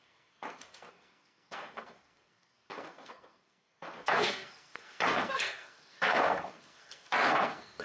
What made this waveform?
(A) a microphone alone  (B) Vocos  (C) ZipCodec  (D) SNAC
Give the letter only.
D